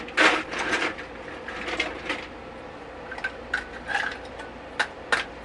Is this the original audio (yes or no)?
yes